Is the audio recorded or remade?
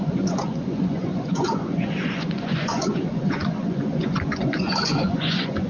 remade